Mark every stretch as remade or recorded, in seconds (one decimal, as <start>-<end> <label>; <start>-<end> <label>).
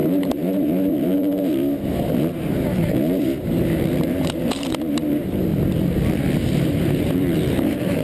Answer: 0.0-5.5 remade; 5.5-6.5 recorded; 6.5-8.0 remade